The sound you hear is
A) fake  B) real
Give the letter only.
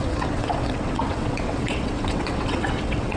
A